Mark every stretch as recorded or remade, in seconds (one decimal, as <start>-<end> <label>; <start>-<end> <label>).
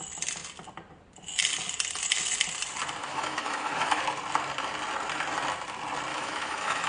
0.0-3.0 recorded; 3.0-4.0 remade; 4.0-6.1 recorded; 6.1-6.9 remade